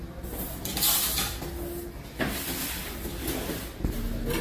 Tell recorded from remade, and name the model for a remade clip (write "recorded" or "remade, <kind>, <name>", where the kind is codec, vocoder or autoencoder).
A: recorded